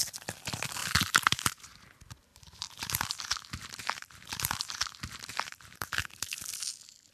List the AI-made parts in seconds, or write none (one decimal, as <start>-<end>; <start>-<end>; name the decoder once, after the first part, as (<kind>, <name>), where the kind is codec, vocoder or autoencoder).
0.8-1.9 (vocoder, BigVGAN v2); 2.3-6.1